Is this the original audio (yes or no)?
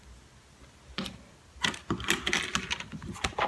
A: yes